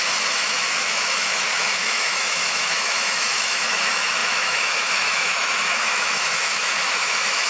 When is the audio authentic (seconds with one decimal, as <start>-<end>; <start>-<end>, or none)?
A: none